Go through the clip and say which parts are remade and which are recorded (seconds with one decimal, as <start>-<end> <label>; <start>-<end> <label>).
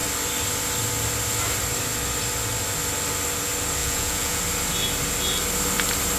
0.0-3.8 recorded; 3.8-4.4 remade; 4.4-6.2 recorded